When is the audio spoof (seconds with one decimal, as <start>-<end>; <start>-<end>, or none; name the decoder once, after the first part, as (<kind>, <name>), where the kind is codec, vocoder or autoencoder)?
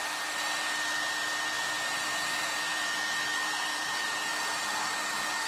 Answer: 3.3-4.0 (codec, DAC); 4.7-5.5